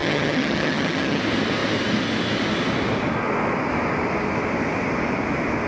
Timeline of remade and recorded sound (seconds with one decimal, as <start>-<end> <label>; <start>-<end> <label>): 0.0-1.2 remade; 1.2-5.7 recorded